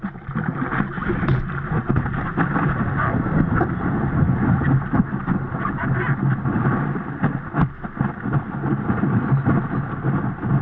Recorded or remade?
recorded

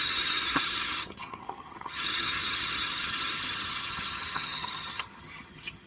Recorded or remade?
remade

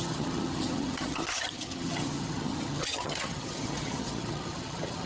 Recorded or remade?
remade